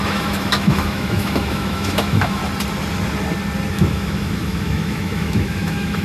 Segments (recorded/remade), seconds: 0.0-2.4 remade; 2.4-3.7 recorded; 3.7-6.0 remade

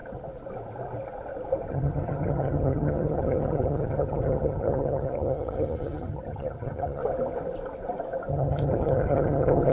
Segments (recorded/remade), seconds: 0.0-1.7 recorded; 1.7-7.0 remade; 7.0-8.3 recorded; 8.3-9.7 remade